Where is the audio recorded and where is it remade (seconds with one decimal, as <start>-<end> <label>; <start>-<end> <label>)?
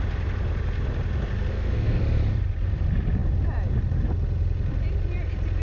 0.0-1.5 recorded; 1.5-2.0 remade; 2.0-5.6 recorded